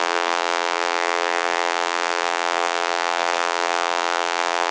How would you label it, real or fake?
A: fake